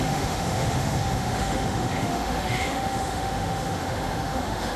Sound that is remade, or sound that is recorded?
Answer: remade